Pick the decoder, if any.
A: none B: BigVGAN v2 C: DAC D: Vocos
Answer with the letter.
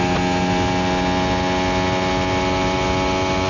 A